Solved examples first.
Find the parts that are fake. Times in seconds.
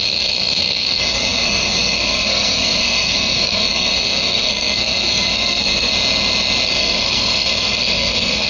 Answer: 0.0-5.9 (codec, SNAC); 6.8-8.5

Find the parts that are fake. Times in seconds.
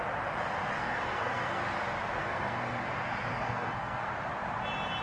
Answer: 0.8-1.6 (codec, SNAC); 2.2-2.9; 3.3-4.1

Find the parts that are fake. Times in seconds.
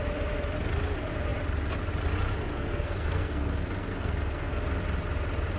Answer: 2.5-4.6 (codec, SNAC)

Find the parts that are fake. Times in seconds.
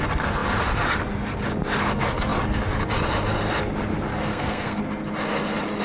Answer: 4.3-4.8 (codec, SNAC)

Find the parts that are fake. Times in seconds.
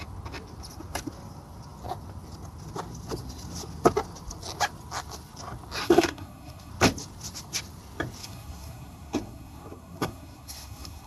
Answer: 5.8-6.7 (codec, SNAC); 8.2-11.1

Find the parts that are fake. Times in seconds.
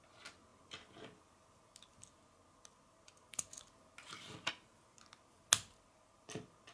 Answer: none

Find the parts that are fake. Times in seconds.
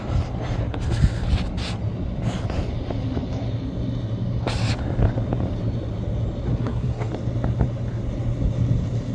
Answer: 6.5-7.1 (codec, SNAC)